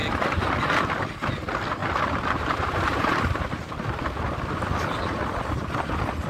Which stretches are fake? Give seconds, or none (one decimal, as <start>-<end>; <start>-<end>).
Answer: 1.8-3.1